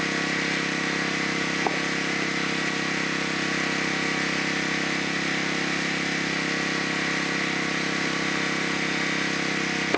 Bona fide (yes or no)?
yes